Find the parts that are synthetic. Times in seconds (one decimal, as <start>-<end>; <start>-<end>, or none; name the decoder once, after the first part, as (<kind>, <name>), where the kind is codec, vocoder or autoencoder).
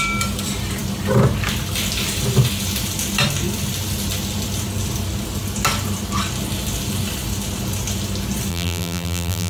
8.5-9.5 (vocoder, BigVGAN v2)